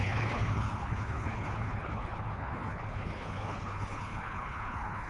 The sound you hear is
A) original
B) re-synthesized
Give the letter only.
B